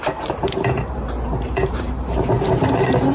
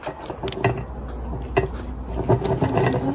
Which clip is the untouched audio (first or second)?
second